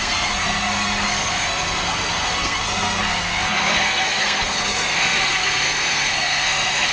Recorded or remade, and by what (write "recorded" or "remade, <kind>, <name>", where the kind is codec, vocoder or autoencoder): remade, codec, SNAC